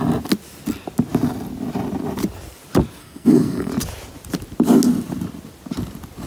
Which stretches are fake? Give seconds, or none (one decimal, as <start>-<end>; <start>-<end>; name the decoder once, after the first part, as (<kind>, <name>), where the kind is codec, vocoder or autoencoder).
3.0-3.7 (codec, SNAC)